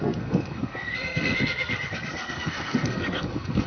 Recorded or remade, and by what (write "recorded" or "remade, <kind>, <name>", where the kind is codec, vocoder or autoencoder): remade, codec, SNAC